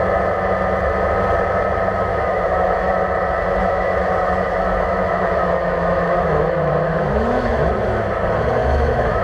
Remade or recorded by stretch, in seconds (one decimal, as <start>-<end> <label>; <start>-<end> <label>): 0.0-2.1 recorded; 2.1-2.9 remade; 2.9-3.6 recorded; 3.6-8.0 remade; 8.0-8.6 recorded; 8.6-9.2 remade